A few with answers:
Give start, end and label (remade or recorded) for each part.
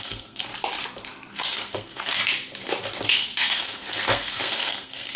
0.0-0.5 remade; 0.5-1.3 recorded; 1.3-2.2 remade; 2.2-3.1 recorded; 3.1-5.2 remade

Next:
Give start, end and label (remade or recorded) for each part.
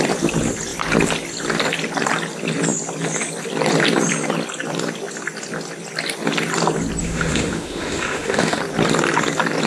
0.0-7.0 recorded; 7.0-8.6 remade; 8.6-9.7 recorded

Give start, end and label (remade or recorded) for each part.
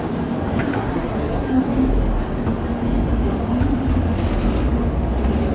0.0-0.7 recorded; 0.7-1.6 remade; 1.6-5.5 recorded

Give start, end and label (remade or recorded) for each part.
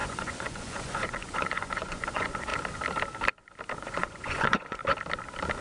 0.0-2.5 remade; 2.5-3.8 recorded; 3.8-4.8 remade; 4.8-5.6 recorded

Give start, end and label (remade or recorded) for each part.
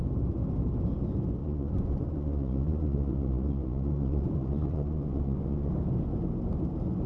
0.0-1.4 recorded; 1.4-5.7 remade; 5.7-7.1 recorded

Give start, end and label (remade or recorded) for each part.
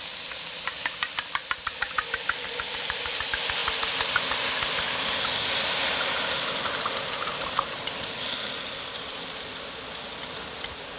0.0-11.0 recorded